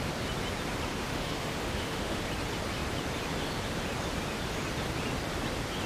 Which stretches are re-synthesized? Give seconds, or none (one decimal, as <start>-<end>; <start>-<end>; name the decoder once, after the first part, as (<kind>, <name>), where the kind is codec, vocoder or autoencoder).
0.9-2.2 (autoencoder, DAC-VAE)